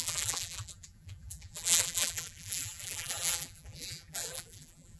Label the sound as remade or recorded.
remade